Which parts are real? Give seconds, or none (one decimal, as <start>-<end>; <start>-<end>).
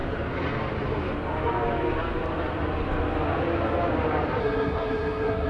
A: 0.0-4.4